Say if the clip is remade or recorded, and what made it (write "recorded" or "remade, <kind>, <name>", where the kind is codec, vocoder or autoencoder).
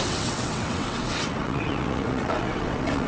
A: remade, vocoder, WaveNeXt